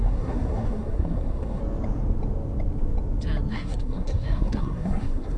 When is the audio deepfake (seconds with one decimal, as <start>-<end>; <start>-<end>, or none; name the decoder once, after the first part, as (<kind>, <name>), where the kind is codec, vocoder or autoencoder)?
0.0-1.6 (codec, SNAC); 3.5-5.4

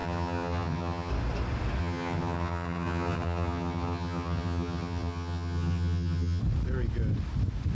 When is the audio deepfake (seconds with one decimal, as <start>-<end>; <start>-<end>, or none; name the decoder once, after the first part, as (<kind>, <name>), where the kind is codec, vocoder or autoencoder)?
0.0-1.1 (vocoder, HiFi-GAN); 1.8-6.4

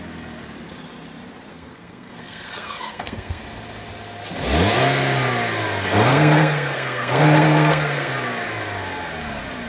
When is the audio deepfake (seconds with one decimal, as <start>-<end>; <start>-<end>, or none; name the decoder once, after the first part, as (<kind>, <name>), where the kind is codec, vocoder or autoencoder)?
1.5-3.4 (codec, SNAC); 6.1-8.1

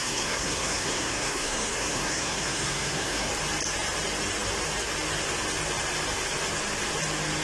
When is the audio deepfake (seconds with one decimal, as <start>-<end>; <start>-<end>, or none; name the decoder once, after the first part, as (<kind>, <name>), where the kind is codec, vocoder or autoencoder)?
0.0-3.3 (codec, SNAC)

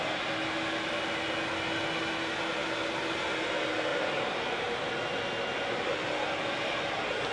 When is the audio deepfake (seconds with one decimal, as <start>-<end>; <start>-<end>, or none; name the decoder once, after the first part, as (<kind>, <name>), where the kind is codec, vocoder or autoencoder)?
3.9-5.0 (vocoder, BigVGAN v2)

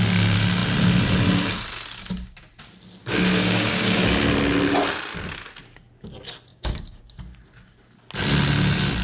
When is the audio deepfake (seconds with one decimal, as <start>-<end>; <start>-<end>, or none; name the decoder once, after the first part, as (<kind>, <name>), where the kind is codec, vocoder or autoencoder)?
3.0-4.0 (codec, DAC); 6.5-7.0